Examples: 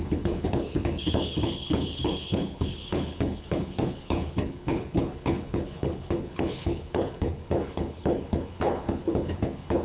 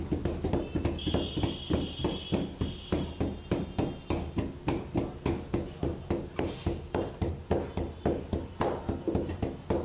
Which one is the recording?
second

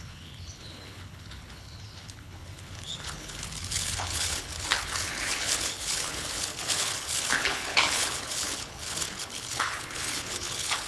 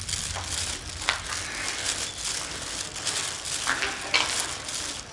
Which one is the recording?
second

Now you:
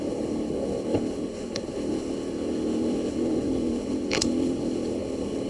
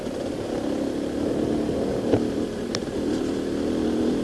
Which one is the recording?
second